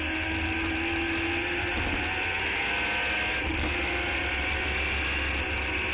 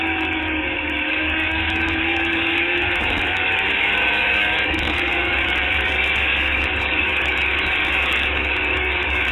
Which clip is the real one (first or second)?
first